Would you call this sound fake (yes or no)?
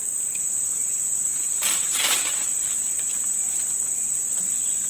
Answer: no